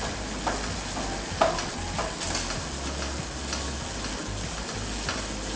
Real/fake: real